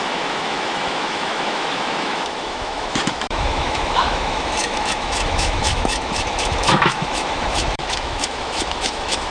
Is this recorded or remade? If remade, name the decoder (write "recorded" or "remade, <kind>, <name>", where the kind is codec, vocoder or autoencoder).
remade, autoencoder, DAC-VAE